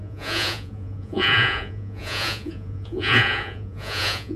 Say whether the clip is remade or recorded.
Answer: remade